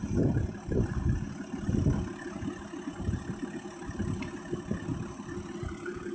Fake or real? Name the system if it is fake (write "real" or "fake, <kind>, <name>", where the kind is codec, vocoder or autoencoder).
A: real